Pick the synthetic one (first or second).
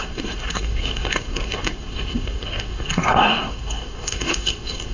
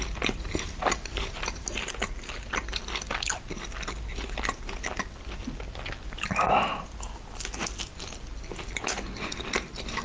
first